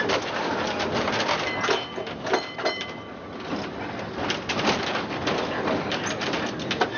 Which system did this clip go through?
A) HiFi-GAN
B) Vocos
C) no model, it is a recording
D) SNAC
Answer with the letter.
C